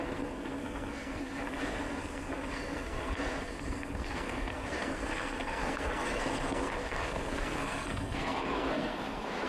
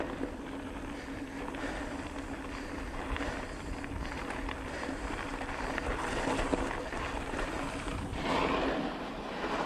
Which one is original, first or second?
second